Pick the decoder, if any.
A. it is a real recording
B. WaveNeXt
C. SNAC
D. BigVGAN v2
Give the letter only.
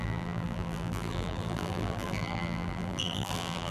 D